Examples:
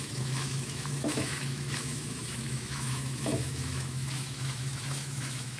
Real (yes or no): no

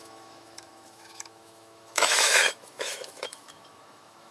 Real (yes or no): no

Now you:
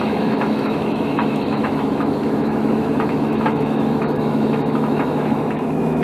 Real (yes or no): no